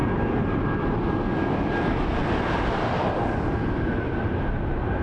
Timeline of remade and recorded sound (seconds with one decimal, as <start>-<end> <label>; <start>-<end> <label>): 0.0-5.0 recorded

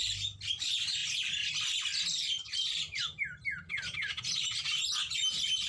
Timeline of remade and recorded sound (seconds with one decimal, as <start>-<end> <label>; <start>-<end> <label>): 0.0-5.7 recorded